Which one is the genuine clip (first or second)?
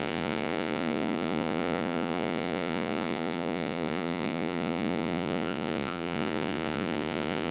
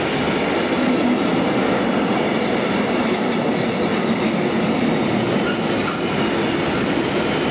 second